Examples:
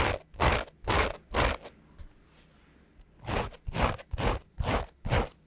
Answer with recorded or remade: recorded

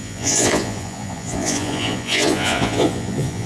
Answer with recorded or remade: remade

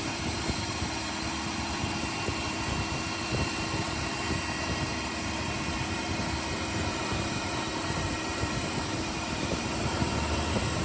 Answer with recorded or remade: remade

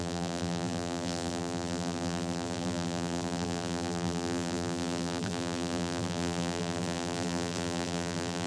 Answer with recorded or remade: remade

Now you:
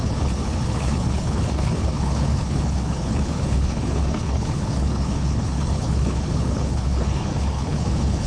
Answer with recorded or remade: remade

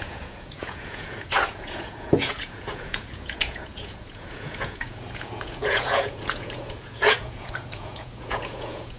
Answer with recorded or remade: remade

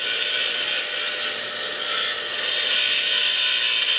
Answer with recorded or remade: recorded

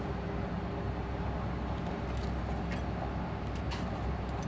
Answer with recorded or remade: recorded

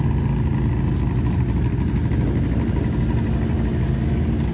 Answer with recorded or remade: recorded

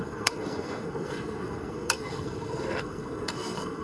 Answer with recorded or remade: remade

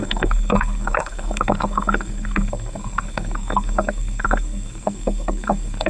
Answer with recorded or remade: remade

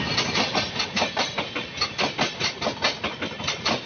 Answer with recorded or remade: recorded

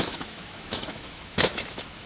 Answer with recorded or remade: remade